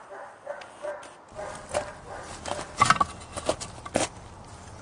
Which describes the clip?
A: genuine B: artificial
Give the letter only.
A